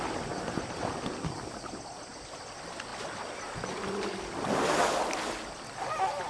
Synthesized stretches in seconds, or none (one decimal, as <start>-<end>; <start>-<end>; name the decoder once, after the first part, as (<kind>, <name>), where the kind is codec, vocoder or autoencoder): none